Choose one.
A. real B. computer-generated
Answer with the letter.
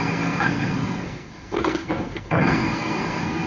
B